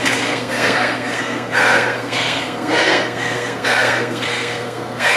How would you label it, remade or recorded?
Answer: remade